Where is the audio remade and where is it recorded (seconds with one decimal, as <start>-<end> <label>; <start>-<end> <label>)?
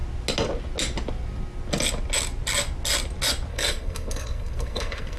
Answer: 0.0-3.5 recorded; 3.5-5.2 remade